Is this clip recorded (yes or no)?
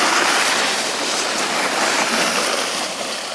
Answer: yes